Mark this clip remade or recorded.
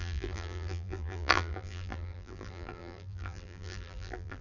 remade